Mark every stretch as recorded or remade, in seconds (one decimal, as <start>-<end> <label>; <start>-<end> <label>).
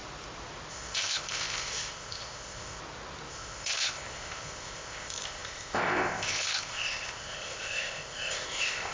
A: 0.0-0.7 recorded; 0.7-2.8 remade; 2.8-3.3 recorded; 3.3-8.9 remade